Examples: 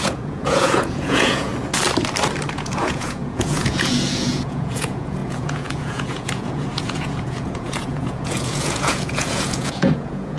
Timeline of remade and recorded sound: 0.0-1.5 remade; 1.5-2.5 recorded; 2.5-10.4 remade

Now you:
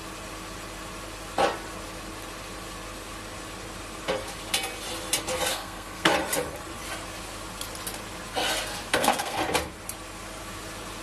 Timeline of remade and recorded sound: 0.0-5.5 recorded; 5.5-6.1 remade; 6.1-8.9 recorded; 8.9-9.4 remade; 9.4-11.0 recorded

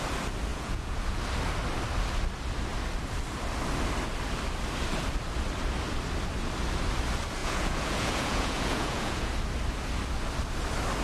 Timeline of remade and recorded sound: 0.0-0.5 recorded; 0.5-1.2 remade; 1.2-7.4 recorded; 7.4-9.3 remade; 9.3-11.0 recorded

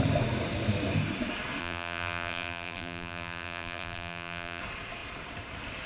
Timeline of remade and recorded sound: 0.0-1.6 recorded; 1.6-4.6 remade; 4.6-5.9 recorded

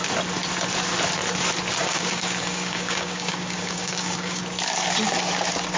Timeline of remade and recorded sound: 0.0-1.8 recorded; 1.8-4.4 remade; 4.4-5.8 recorded

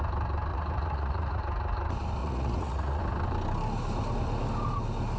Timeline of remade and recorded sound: 0.0-0.5 recorded; 0.5-1.4 remade; 1.4-2.2 recorded; 2.2-3.0 remade; 3.0-5.2 recorded

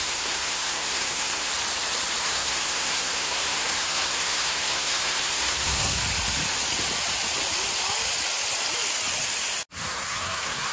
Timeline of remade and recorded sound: 0.0-1.5 remade; 1.5-2.2 recorded; 2.2-6.0 remade; 6.0-9.7 recorded; 9.7-10.7 remade

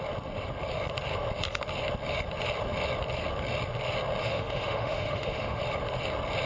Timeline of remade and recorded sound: 0.0-4.2 recorded; 4.2-5.6 remade; 5.6-6.5 recorded